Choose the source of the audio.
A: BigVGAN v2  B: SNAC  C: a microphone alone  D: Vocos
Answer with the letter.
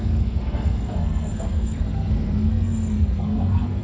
B